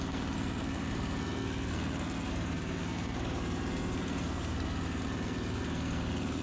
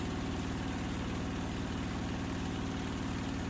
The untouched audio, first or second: second